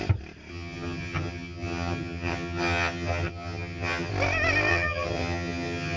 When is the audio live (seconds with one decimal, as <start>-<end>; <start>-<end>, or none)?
0.0-0.5; 4.1-4.7